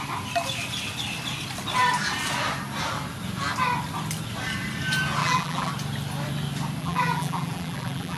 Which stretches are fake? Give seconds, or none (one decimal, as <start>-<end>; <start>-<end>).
5.2-5.7; 6.8-8.2